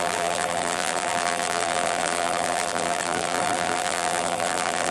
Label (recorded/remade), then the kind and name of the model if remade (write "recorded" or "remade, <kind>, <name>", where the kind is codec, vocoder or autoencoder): remade, vocoder, BigVGAN v2